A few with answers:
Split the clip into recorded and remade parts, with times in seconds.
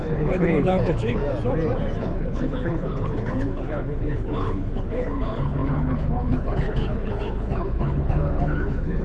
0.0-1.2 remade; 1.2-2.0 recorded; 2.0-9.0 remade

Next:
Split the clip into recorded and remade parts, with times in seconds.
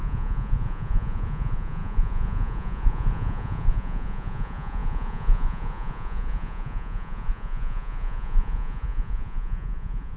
0.0-10.2 remade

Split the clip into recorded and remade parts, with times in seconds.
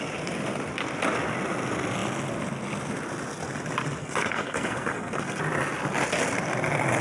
0.0-4.0 recorded; 4.0-5.4 remade; 5.4-7.0 recorded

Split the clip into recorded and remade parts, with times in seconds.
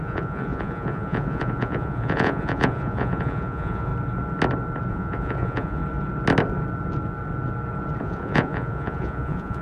0.0-3.9 remade; 3.9-4.9 recorded; 4.9-5.8 remade; 5.8-8.0 recorded; 8.0-9.6 remade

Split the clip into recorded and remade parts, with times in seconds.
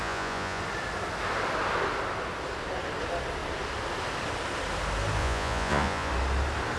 0.0-0.6 remade; 0.6-5.2 recorded; 5.2-6.1 remade; 6.1-6.8 recorded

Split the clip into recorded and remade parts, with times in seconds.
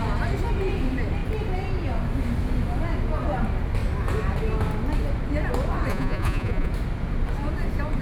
0.0-5.9 recorded; 5.9-6.7 remade; 6.7-8.0 recorded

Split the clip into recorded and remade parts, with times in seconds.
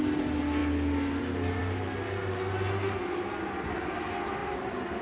0.0-5.0 recorded